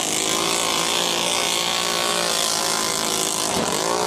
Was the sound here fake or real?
real